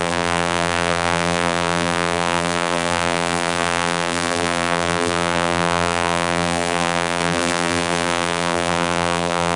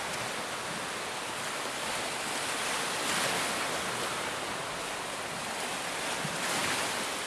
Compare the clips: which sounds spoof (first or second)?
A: first